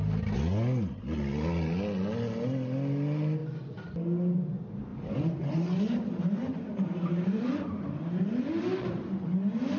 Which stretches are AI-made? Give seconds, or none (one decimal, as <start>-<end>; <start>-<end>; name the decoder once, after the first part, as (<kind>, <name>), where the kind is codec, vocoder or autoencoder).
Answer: 4.9-8.5 (vocoder, BigVGAN v2)